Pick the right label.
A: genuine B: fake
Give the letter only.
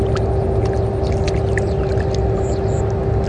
A